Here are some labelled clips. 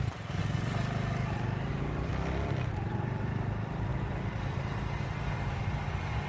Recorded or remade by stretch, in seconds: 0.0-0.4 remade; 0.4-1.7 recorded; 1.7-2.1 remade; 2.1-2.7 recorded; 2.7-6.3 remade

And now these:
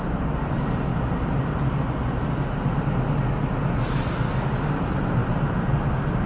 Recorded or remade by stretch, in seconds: 0.0-6.3 recorded